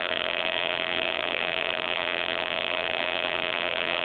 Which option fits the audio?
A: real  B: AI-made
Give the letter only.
B